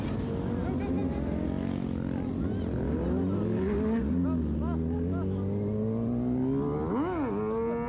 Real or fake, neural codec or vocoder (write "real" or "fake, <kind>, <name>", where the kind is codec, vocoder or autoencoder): real